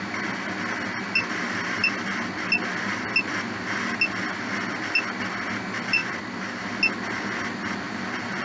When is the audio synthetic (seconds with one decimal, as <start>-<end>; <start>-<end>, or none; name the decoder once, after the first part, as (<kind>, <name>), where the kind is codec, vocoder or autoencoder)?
none